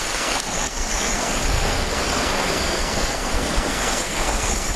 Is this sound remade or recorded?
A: remade